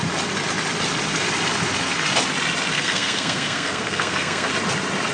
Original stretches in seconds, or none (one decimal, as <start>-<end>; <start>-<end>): 0.0-2.7; 4.5-5.1